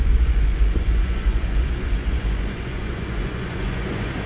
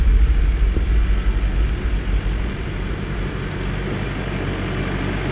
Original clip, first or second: second